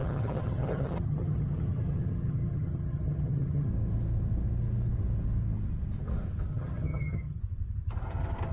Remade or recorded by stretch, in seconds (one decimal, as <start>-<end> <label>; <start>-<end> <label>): 0.0-3.7 remade; 3.7-6.5 recorded; 6.5-7.4 remade; 7.4-8.5 recorded